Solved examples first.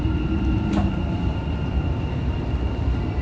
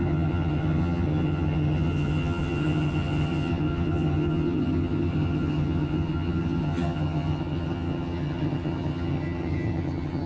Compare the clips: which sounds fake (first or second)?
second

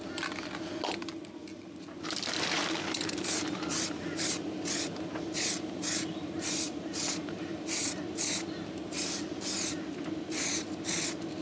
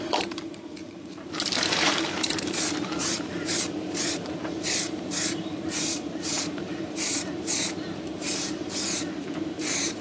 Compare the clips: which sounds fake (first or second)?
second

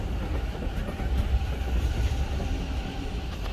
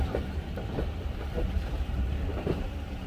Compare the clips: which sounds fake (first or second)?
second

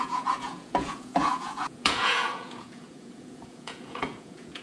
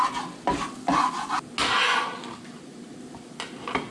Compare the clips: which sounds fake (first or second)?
first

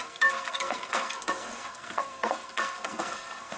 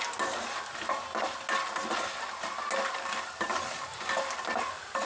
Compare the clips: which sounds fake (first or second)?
first